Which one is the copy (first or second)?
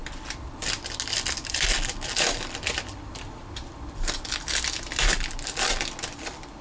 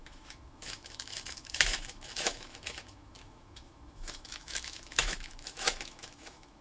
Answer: second